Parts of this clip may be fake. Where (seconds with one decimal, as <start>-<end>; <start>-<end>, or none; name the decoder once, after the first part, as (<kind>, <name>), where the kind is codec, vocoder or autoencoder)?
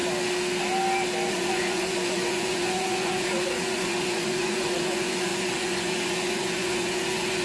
1.3-7.4 (vocoder, Vocos)